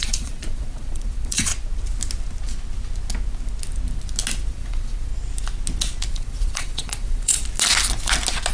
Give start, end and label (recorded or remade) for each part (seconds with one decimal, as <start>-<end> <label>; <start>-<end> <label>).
0.0-1.5 remade; 1.5-4.5 recorded; 4.5-5.1 remade; 5.1-6.1 recorded; 6.1-7.4 remade; 7.4-8.5 recorded